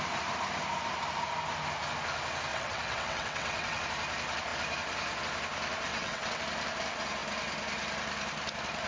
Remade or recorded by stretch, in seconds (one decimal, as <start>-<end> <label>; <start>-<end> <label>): 0.0-2.5 recorded; 2.5-3.8 remade; 3.8-5.9 recorded; 5.9-6.4 remade; 6.4-8.9 recorded